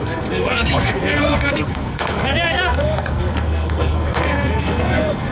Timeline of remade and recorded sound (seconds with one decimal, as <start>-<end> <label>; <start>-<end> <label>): 0.0-5.3 remade